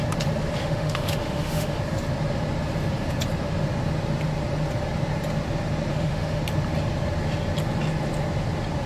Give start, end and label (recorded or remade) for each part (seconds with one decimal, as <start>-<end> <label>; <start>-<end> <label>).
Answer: 0.0-0.6 recorded; 0.6-1.8 remade; 1.8-5.9 recorded; 5.9-6.4 remade; 6.4-8.9 recorded

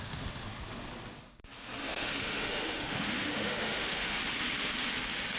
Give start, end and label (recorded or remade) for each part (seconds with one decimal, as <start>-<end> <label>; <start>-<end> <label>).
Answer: 0.0-1.8 recorded; 1.8-4.2 remade; 4.2-5.4 recorded

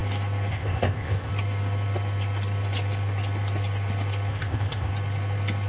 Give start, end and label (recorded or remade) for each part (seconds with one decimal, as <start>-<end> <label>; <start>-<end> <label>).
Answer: 0.0-0.5 recorded; 0.5-1.3 remade; 1.3-4.3 recorded; 4.3-4.9 remade; 4.9-5.7 recorded

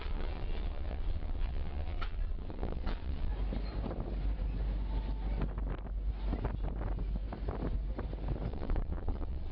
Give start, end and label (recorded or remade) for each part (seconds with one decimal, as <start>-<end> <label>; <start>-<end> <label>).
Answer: 0.0-3.3 remade; 3.3-8.5 recorded; 8.5-9.5 remade

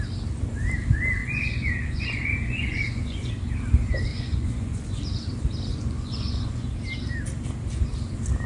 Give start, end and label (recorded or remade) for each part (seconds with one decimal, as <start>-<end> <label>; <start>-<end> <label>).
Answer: 0.0-1.2 recorded; 1.2-3.3 remade; 3.3-4.1 recorded; 4.1-5.0 remade; 5.0-5.7 recorded; 5.7-6.7 remade; 6.7-8.5 recorded

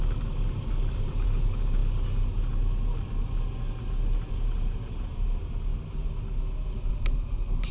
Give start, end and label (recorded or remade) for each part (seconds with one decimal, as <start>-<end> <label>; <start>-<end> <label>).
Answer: 0.0-7.7 recorded

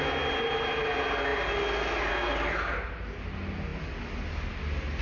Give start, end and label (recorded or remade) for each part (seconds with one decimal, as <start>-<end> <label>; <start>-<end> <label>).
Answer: 0.0-5.0 recorded

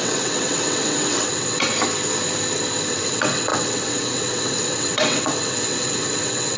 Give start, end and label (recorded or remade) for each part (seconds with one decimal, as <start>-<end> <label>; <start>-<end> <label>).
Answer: 0.0-1.7 remade; 1.7-2.9 recorded; 2.9-6.6 remade